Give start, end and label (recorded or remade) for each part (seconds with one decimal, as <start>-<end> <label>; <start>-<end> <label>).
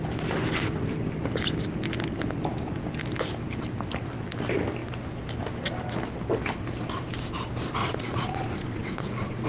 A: 0.0-7.8 recorded; 7.8-9.5 remade